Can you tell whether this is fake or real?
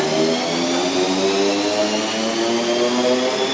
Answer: real